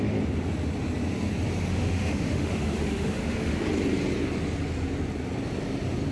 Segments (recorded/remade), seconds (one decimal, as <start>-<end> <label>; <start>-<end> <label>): 0.0-1.7 recorded; 1.7-3.6 remade; 3.6-6.1 recorded